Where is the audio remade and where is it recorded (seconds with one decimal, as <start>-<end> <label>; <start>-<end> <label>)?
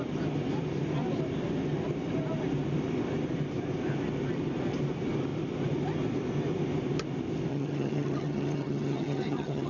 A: 0.0-7.5 recorded; 7.5-9.7 remade